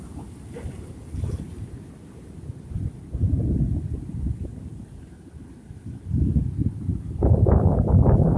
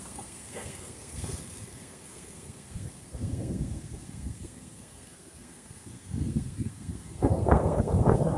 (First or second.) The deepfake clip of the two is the second